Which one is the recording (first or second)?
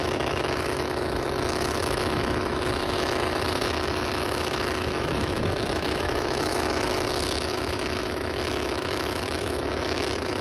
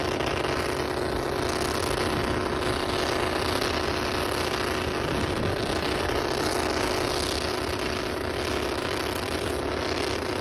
second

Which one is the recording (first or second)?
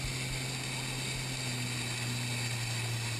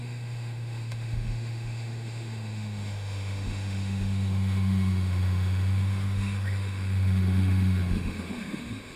first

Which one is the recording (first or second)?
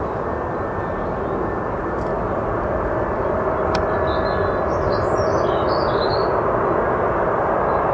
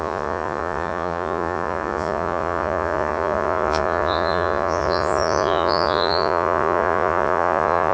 first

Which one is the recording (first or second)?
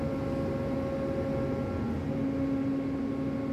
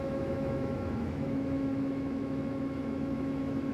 first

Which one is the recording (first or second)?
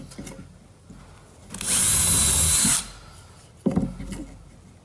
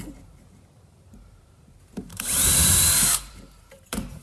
first